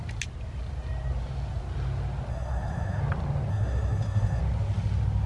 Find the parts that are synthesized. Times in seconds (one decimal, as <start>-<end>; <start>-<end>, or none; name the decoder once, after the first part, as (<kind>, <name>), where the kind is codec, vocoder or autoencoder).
2.3-3.0 (codec, SNAC); 3.5-4.4